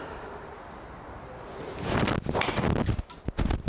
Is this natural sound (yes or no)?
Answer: yes